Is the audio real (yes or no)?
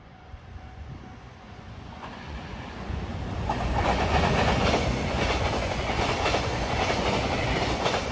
no